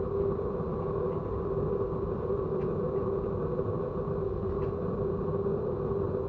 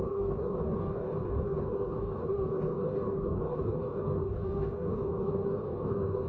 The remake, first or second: second